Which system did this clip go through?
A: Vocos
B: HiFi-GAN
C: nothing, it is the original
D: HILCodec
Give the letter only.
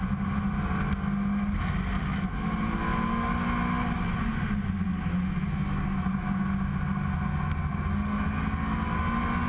C